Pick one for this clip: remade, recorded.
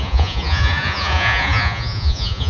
remade